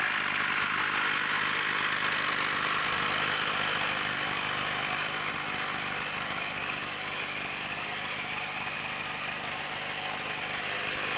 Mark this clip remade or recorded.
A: recorded